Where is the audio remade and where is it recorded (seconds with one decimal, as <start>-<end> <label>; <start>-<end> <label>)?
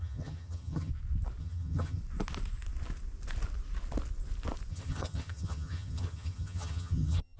0.0-0.9 remade; 0.9-1.4 recorded; 1.4-2.0 remade; 2.0-4.7 recorded; 4.7-7.4 remade